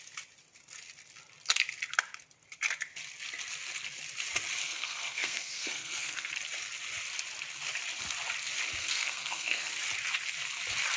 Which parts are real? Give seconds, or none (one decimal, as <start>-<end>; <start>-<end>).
0.0-4.6; 6.3-8.8; 9.7-11.0